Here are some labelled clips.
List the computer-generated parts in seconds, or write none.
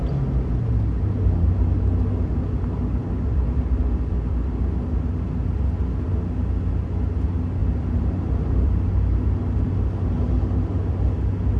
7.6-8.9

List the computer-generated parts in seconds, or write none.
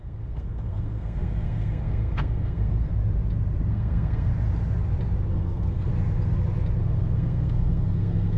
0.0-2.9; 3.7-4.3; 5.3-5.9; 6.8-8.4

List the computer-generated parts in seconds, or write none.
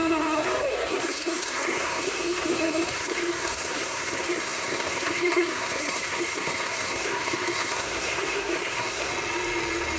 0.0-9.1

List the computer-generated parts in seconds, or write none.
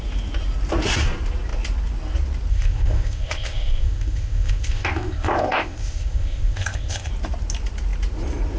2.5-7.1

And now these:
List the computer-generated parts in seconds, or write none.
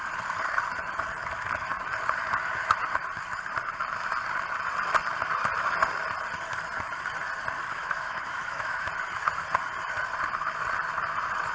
7.8-8.9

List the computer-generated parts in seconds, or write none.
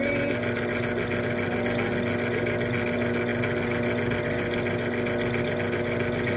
none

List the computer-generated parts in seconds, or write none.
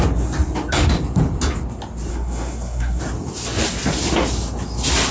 2.1-3.0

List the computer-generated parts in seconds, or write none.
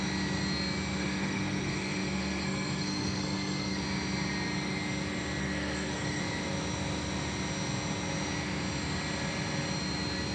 1.0-3.8; 5.4-6.2